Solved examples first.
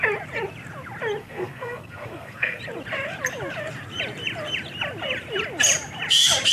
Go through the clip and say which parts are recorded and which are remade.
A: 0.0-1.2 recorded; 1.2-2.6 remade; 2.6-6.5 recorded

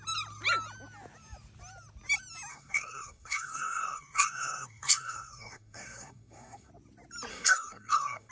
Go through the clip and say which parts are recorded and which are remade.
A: 0.0-2.5 recorded; 2.5-6.7 remade; 6.7-7.3 recorded; 7.3-8.3 remade